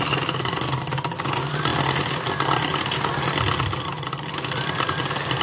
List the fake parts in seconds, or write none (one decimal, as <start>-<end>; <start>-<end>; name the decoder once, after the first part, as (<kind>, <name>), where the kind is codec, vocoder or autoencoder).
none